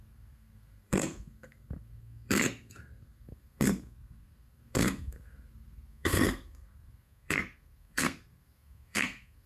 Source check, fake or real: fake